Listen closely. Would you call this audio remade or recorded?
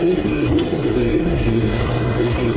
remade